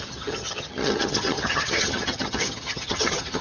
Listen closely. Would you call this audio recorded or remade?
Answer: remade